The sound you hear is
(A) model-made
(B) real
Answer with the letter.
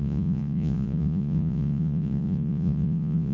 A